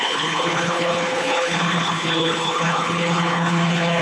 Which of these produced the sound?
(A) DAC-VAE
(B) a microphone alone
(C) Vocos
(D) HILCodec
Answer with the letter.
D